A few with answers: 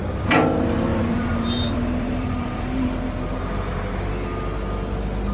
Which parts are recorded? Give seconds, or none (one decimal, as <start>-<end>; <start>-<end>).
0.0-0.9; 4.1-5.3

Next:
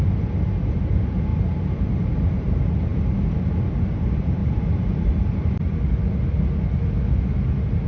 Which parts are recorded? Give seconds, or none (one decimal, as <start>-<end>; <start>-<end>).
0.0-1.3; 2.3-4.4; 5.1-7.9

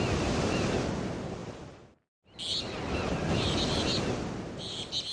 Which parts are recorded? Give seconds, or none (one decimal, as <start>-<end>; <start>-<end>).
0.0-5.1

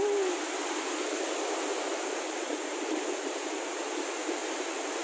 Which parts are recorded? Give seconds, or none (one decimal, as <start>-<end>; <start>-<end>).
0.0-1.7; 4.0-5.0

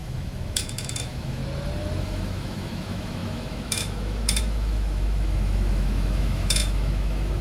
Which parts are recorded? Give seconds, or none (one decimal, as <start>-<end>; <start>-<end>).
1.4-2.0

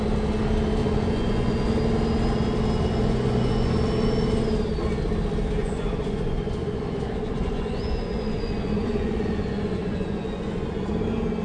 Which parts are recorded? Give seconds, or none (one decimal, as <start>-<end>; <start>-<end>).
0.0-0.8; 1.8-3.0; 3.7-5.6; 10.9-11.4

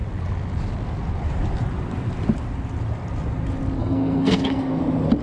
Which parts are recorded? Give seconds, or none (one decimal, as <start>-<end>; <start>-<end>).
0.0-3.8; 4.8-5.2

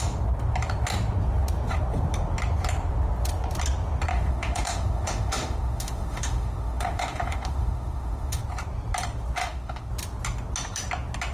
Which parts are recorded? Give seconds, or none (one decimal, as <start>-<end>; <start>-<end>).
0.0-4.1; 8.4-9.4; 9.9-11.3